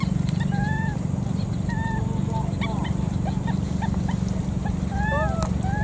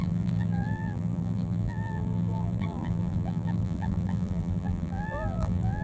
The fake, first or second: second